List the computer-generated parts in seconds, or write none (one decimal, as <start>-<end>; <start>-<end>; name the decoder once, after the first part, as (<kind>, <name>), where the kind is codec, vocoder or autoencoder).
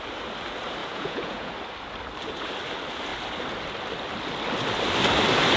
0.8-1.5 (vocoder, Vocos)